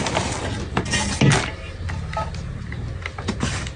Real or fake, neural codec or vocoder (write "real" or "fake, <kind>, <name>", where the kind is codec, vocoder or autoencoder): real